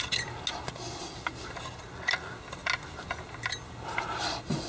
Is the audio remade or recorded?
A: recorded